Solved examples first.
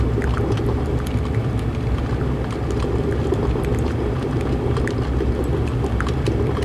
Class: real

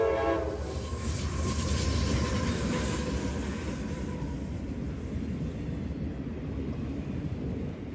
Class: real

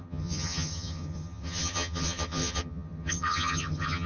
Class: fake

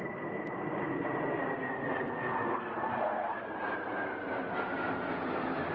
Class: real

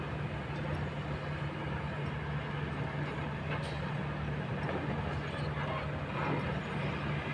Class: real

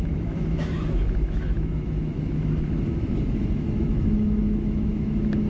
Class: fake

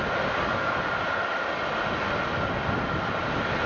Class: real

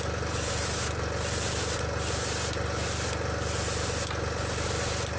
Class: real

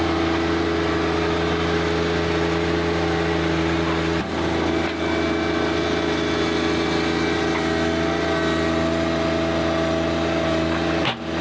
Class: real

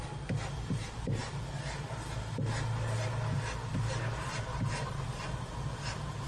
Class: real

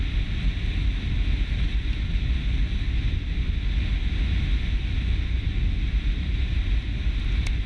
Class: real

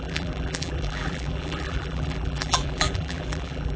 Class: fake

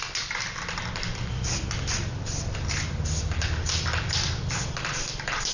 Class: fake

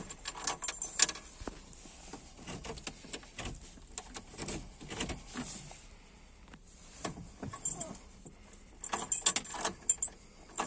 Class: real